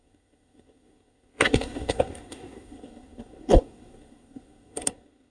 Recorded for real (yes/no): no